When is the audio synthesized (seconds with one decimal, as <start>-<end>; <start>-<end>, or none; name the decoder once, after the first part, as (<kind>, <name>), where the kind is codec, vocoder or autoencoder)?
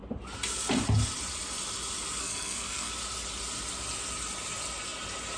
2.2-2.9 (codec, SNAC)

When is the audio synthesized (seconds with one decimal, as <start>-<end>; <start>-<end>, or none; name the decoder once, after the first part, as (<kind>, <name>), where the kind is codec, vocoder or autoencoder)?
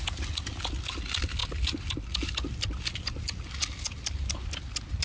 none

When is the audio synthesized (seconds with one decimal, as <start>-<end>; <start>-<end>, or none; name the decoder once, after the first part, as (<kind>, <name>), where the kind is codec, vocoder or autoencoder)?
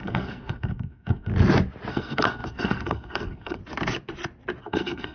0.0-1.3 (codec, SNAC); 1.9-3.6; 4.6-5.1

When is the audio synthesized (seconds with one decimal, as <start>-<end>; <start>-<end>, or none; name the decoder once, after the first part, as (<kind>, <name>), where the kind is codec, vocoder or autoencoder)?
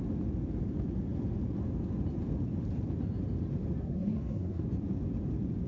3.8-4.6 (codec, SNAC)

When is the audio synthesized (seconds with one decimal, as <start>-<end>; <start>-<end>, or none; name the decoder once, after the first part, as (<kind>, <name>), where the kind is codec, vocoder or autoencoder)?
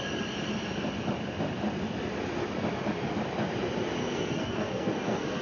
4.0-5.4 (codec, SNAC)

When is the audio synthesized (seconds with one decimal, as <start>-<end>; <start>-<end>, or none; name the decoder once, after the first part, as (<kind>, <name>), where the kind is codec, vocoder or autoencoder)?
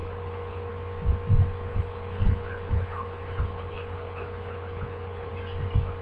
0.0-0.7 (codec, HILCodec); 1.7-5.3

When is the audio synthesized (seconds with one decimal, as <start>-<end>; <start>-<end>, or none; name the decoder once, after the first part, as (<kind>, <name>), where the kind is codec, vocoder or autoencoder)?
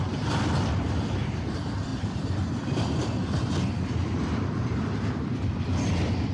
0.0-6.3 (vocoder, BigVGAN v2)